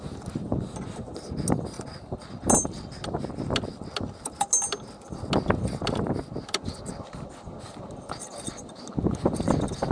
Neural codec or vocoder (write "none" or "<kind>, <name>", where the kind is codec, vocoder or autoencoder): none